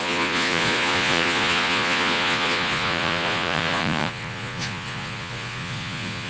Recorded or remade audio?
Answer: remade